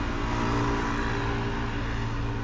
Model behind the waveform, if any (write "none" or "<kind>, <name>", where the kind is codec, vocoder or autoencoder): none